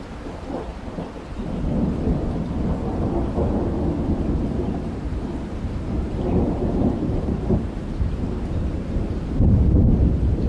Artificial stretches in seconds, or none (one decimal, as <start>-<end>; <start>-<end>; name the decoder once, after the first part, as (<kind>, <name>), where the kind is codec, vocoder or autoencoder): 0.0-0.7 (vocoder, BigVGAN v2); 4.6-10.5